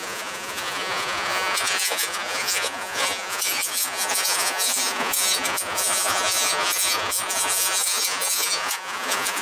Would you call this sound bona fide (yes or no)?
no